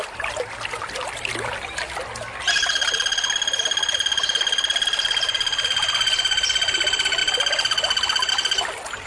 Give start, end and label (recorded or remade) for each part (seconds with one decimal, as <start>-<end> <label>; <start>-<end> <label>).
0.0-9.1 recorded